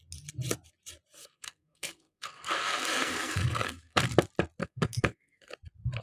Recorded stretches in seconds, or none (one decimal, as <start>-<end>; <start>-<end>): 0.0-1.2; 4.0-4.6; 5.5-6.0